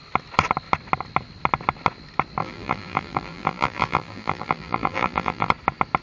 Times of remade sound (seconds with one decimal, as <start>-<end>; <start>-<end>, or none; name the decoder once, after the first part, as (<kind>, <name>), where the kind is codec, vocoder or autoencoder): 2.4-5.5 (vocoder, BigVGAN v2)